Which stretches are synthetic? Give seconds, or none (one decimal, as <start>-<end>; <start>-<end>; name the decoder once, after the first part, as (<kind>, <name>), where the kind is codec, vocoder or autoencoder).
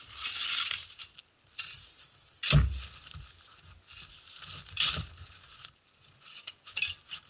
5.2-6.8 (vocoder, Vocos)